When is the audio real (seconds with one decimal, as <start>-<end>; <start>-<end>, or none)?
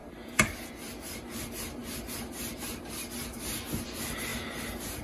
0.0-5.0